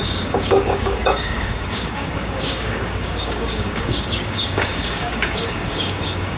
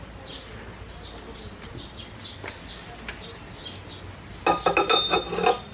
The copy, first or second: first